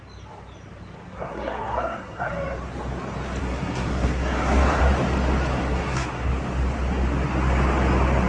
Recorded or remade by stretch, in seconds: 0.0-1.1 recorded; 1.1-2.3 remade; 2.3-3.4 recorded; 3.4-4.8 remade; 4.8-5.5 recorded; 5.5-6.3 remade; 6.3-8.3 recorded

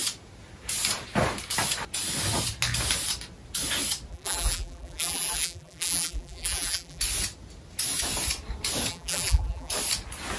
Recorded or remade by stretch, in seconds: 0.0-4.1 recorded; 4.1-7.0 remade; 7.0-8.9 recorded; 8.9-9.7 remade; 9.7-10.4 recorded

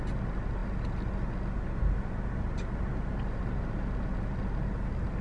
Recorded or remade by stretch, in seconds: 0.0-5.2 recorded

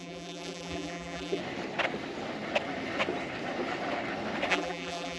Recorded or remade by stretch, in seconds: 0.0-1.4 remade; 1.4-4.5 recorded; 4.5-5.2 remade

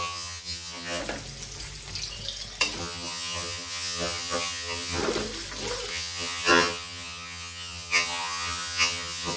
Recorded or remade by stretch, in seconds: 0.0-1.0 remade; 1.0-2.8 recorded; 2.8-5.0 remade; 5.0-5.9 recorded; 5.9-9.4 remade

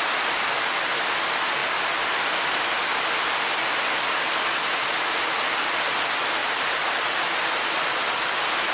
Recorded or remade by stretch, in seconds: 0.0-6.4 recorded; 6.4-7.4 remade; 7.4-8.7 recorded